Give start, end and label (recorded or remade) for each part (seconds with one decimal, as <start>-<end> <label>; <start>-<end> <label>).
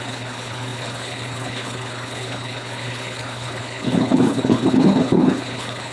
0.0-5.9 remade